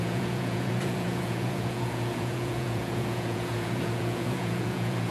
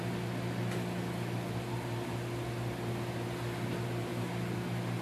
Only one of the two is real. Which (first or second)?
second